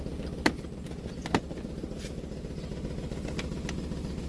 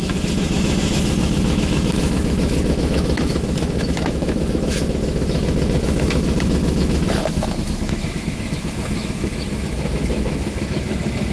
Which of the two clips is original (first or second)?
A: first